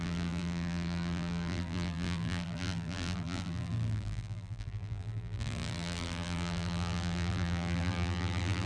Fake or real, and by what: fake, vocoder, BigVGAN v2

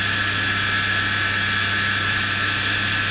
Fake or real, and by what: real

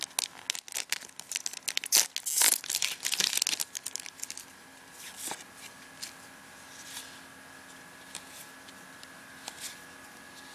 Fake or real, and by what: real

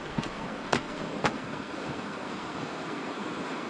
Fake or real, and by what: fake, codec, SNAC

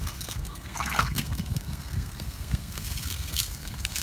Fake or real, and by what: fake, codec, SNAC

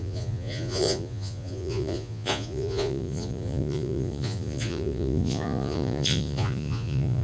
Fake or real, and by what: fake, vocoder, Vocos